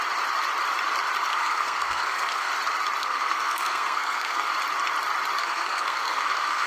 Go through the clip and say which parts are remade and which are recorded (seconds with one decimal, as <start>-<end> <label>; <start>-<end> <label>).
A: 0.0-1.3 recorded; 1.3-2.5 remade; 2.5-3.0 recorded; 3.0-4.5 remade; 4.5-5.4 recorded; 5.4-6.7 remade